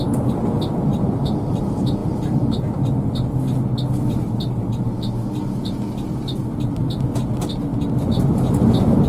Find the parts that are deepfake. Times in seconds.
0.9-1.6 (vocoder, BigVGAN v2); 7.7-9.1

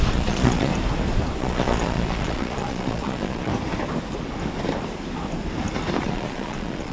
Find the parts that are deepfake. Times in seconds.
0.0-0.7 (vocoder, Vocos); 1.4-3.5; 6.0-6.9

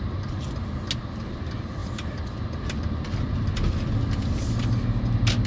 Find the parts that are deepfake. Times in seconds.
none